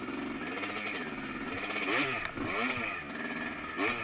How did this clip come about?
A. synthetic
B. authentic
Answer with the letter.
B